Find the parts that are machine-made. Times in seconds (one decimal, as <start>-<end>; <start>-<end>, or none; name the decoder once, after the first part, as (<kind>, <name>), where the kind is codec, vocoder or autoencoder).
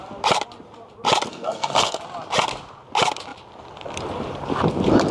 1.3-2.0 (codec, SNAC)